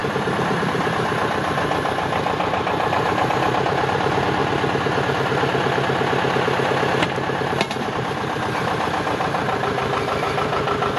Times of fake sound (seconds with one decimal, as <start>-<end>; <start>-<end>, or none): 1.9-4.4; 7.9-11.0